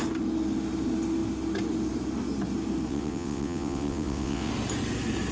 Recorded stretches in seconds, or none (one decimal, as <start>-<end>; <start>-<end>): 0.0-2.9; 4.5-5.3